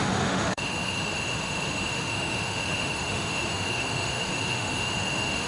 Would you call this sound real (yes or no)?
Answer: no